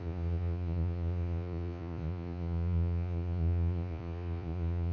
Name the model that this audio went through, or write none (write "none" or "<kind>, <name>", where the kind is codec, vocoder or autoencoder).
vocoder, Vocos